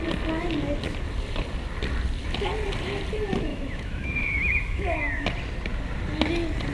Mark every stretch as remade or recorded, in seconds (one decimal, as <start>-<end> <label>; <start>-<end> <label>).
0.0-3.5 recorded; 3.5-5.3 remade; 5.3-6.7 recorded